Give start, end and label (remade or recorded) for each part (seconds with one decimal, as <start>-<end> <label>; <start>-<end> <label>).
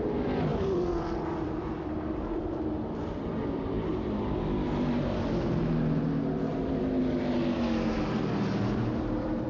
0.0-3.9 remade; 3.9-8.7 recorded; 8.7-9.5 remade